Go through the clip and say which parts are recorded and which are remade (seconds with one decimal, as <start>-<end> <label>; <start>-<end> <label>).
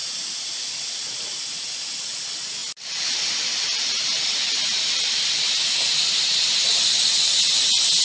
0.0-8.0 recorded